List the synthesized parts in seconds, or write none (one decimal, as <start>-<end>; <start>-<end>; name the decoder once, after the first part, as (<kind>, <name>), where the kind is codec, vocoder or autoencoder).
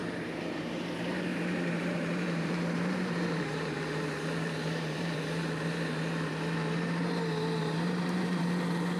0.0-0.7 (vocoder, BigVGAN v2); 1.3-5.2; 7.6-8.4